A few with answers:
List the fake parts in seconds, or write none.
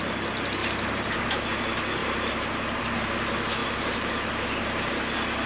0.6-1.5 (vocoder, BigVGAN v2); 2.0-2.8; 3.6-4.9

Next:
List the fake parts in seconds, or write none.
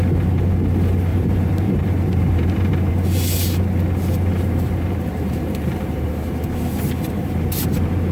1.1-2.9 (vocoder, BigVGAN v2); 4.3-6.1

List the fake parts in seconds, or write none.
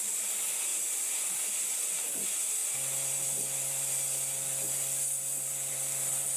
2.6-5.7 (vocoder, BigVGAN v2)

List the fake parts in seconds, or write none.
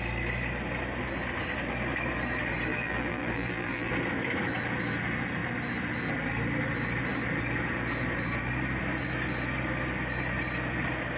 2.7-3.9 (vocoder, BigVGAN v2)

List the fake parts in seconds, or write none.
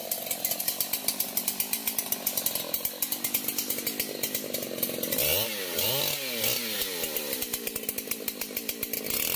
0.0-0.6 (vocoder, BigVGAN v2)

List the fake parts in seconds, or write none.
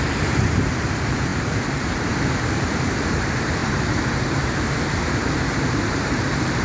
0.0-6.6 (vocoder, BigVGAN v2)